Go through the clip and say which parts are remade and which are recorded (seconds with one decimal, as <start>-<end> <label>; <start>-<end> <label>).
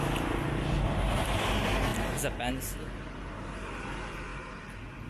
0.0-5.1 recorded